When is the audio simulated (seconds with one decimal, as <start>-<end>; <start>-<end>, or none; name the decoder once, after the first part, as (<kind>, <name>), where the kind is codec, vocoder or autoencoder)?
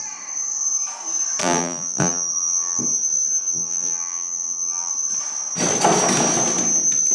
1.4-2.8 (vocoder, BigVGAN v2); 3.4-4.9